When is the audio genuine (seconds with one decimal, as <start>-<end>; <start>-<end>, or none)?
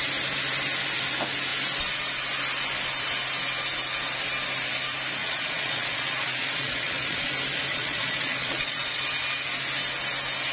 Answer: 0.0-5.2; 7.3-7.7; 9.0-10.5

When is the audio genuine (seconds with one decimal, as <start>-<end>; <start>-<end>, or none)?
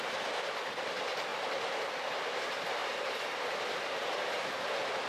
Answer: 0.0-2.8; 3.4-5.1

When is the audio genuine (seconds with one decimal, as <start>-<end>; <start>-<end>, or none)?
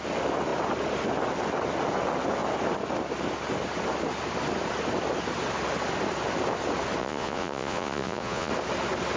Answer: 0.0-7.0; 8.5-9.2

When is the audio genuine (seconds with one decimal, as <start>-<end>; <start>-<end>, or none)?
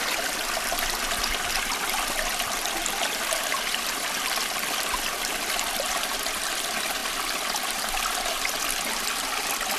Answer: 0.0-9.8